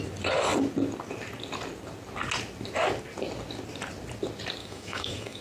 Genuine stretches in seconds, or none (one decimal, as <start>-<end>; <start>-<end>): 0.0-4.6